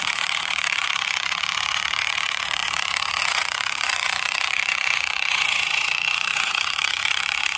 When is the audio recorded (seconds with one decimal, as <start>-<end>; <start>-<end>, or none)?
none